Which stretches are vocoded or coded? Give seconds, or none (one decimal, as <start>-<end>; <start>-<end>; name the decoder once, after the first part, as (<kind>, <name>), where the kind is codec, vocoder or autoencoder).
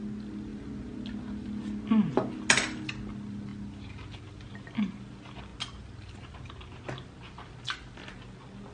none